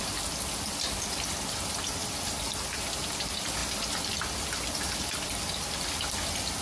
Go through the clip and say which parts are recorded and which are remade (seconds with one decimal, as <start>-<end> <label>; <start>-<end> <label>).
0.0-6.6 recorded